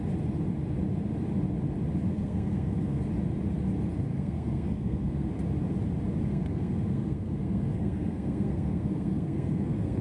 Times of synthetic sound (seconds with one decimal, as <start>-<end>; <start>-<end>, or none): 2.1-3.0; 4.1-5.3; 6.3-10.0